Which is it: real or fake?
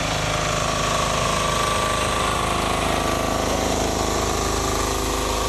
real